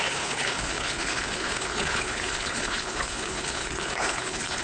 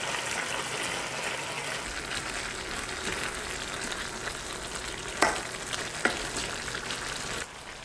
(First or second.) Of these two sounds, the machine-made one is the first